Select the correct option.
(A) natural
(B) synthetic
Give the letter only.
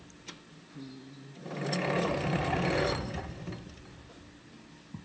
A